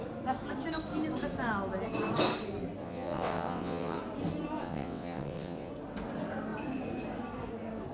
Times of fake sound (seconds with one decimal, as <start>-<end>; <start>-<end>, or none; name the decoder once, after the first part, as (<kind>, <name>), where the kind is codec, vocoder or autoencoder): 2.8-4.0 (vocoder, WaveNeXt); 4.6-5.7